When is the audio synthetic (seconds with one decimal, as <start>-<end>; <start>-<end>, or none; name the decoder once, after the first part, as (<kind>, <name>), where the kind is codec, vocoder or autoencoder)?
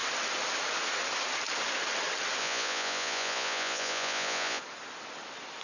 2.4-4.6 (vocoder, Vocos)